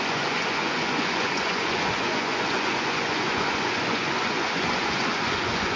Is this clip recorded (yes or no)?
no